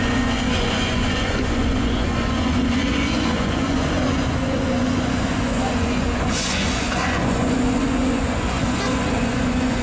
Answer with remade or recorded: remade